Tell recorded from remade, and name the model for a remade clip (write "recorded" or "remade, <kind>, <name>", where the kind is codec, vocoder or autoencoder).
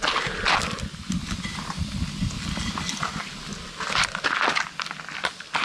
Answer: recorded